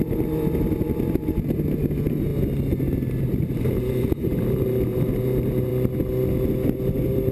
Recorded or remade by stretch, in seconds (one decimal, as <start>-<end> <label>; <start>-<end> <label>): 0.0-2.3 remade; 2.3-3.2 recorded; 3.2-5.7 remade; 5.7-6.8 recorded; 6.8-7.3 remade